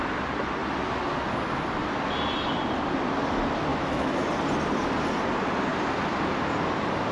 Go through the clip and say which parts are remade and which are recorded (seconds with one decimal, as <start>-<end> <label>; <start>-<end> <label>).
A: 0.0-3.7 recorded; 3.7-4.3 remade; 4.3-7.1 recorded